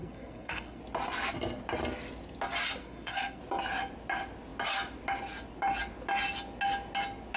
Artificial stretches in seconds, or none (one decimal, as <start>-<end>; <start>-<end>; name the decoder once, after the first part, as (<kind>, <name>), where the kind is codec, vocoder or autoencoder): 0.0-0.8 (codec, SNAC); 2.8-3.4